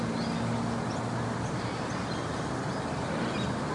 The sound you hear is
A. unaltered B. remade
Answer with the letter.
A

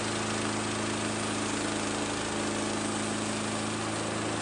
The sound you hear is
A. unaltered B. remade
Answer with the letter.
A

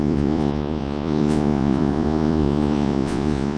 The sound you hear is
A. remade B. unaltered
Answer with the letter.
A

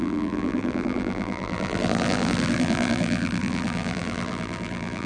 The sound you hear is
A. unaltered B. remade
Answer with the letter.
B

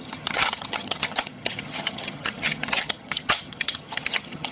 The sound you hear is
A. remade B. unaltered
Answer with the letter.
A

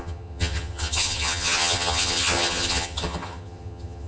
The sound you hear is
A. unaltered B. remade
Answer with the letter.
B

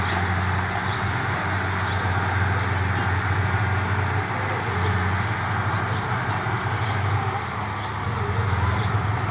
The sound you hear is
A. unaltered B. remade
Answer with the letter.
A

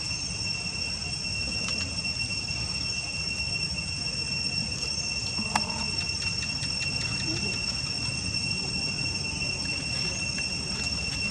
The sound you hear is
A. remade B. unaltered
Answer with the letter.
B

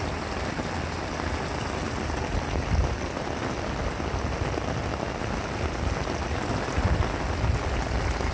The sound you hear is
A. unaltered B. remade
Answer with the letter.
A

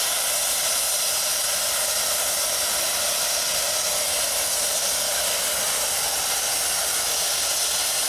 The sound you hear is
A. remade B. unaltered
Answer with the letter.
B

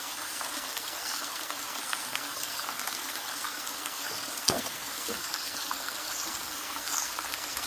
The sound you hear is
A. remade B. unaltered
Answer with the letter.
A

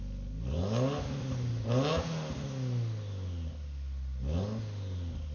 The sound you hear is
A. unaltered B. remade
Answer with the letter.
A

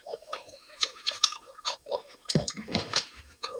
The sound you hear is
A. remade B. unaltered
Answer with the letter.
A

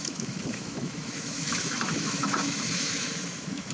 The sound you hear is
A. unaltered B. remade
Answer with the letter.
B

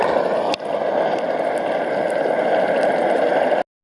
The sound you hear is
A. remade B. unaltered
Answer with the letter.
B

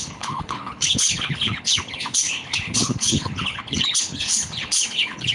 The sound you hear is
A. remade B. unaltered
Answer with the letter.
A